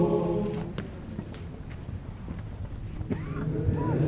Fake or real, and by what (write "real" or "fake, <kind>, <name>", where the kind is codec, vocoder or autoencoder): real